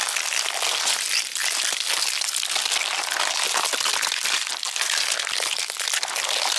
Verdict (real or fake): real